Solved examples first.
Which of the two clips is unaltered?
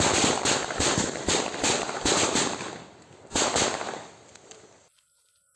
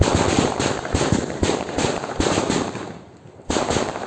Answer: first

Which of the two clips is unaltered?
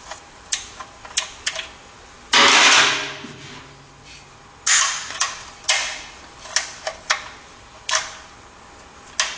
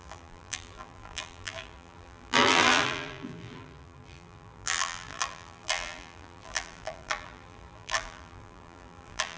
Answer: first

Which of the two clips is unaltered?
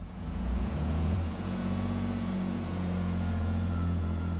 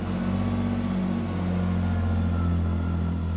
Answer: second